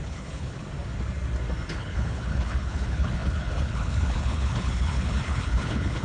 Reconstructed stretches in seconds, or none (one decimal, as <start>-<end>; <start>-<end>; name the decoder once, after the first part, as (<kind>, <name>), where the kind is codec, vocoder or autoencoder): 0.0-0.6 (codec, HILCodec); 1.7-6.0